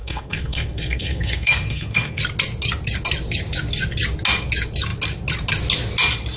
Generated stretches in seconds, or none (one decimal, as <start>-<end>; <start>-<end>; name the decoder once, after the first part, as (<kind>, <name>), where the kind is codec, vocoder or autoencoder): 0.0-2.2 (codec, SNAC)